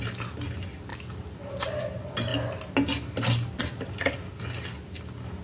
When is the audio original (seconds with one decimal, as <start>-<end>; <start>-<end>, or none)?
0.0-5.4